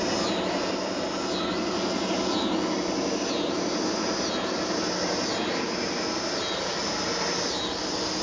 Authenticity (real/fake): real